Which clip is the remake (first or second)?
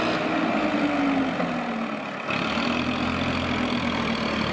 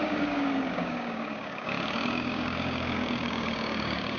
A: second